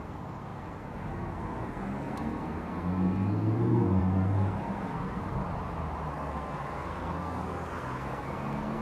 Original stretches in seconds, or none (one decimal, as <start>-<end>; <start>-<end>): 5.4-6.1